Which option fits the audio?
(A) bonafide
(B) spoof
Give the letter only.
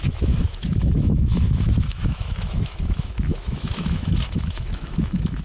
B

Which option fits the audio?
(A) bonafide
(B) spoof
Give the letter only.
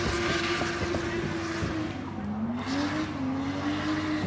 A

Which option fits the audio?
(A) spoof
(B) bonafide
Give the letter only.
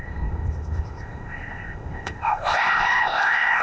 A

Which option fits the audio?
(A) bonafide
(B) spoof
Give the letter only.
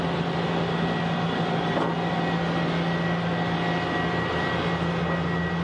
A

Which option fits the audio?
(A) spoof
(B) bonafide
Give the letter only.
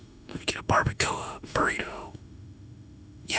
A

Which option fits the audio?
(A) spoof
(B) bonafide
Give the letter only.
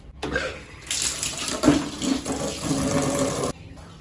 B